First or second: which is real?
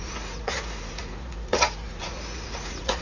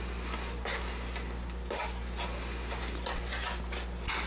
second